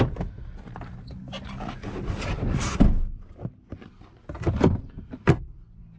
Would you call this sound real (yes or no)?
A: yes